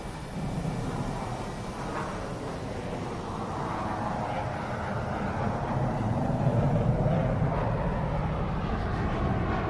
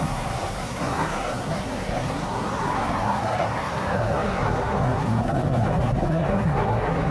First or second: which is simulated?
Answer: second